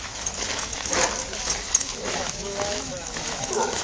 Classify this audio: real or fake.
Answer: fake